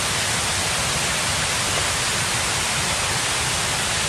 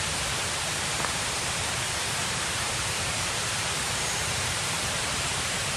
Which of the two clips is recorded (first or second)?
first